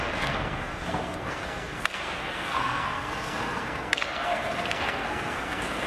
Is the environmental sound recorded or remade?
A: remade